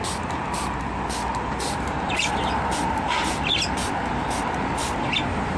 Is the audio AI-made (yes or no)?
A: no